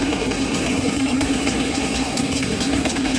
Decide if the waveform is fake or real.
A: fake